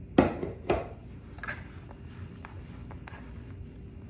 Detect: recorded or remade recorded